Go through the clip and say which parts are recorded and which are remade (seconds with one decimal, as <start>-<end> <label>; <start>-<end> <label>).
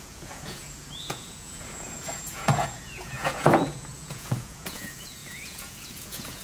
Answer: 0.0-6.4 remade